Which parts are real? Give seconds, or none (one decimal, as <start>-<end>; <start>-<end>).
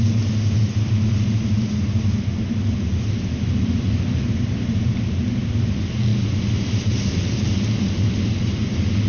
0.0-9.1